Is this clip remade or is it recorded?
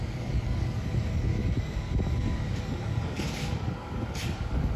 remade